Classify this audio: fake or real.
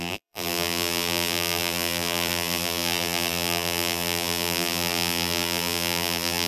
fake